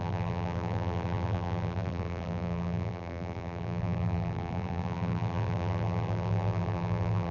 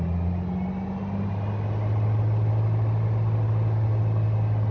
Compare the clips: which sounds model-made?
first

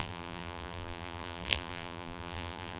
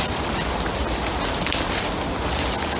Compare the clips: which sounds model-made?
first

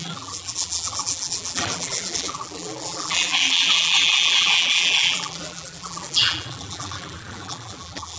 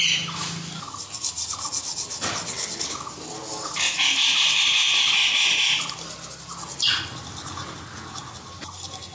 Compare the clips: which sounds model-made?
first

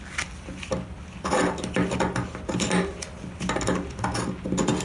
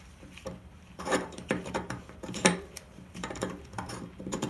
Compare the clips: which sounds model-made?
second